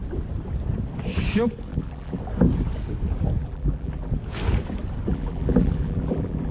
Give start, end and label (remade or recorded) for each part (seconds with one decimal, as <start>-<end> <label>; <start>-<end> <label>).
0.0-1.7 recorded; 1.7-2.2 remade; 2.2-3.4 recorded; 3.4-4.1 remade; 4.1-5.1 recorded; 5.1-6.5 remade